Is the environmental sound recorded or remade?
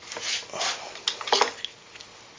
recorded